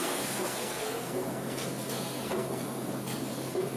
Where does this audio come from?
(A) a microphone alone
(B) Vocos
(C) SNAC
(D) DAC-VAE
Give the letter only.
C